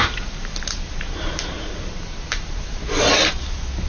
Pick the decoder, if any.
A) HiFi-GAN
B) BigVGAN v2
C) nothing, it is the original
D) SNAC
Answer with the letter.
B